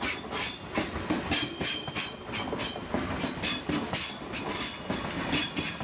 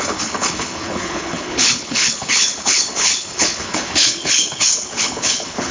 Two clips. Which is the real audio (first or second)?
first